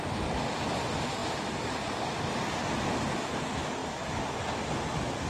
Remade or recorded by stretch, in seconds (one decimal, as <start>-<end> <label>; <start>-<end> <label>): 0.0-5.3 recorded